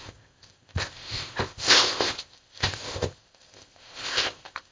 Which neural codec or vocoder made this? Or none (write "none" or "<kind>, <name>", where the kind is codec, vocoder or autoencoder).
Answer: codec, ZipCodec